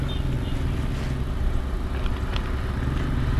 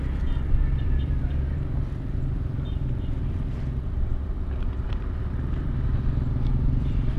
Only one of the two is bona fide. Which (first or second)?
first